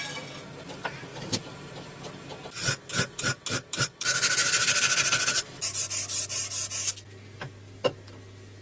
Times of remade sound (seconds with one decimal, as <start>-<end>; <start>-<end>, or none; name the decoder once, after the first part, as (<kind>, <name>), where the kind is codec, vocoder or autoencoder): 1.1-2.1 (vocoder, BigVGAN v2)